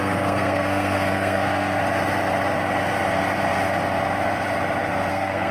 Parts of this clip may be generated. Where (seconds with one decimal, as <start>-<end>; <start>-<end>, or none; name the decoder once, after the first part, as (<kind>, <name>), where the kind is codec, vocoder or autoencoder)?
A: 0.0-1.8 (codec, SNAC); 5.1-5.5